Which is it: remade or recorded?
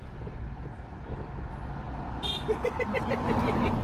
recorded